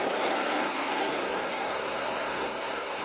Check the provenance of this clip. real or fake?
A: fake